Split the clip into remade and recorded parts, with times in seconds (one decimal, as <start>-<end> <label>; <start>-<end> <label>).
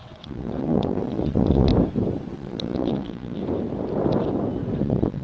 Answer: 0.0-1.7 remade; 1.7-2.3 recorded; 2.3-3.4 remade; 3.4-4.8 recorded; 4.8-5.2 remade